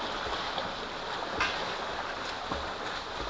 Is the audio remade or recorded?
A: recorded